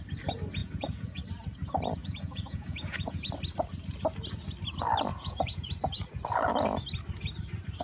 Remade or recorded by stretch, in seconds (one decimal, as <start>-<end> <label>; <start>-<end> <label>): 0.0-0.6 recorded; 0.6-1.2 remade; 1.2-2.0 recorded; 2.0-3.3 remade; 3.3-5.1 recorded; 5.1-5.7 remade; 5.7-7.8 recorded